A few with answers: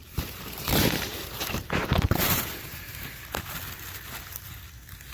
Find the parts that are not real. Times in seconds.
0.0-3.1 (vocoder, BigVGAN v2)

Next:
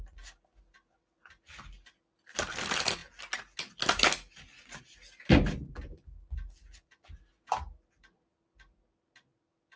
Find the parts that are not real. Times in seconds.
none

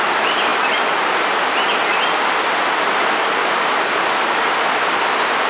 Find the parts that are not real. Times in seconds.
none